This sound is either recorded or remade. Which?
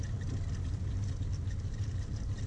recorded